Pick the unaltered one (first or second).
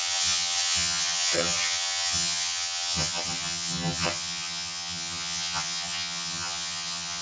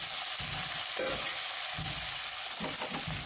second